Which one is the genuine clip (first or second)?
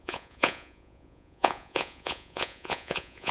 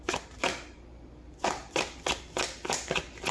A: second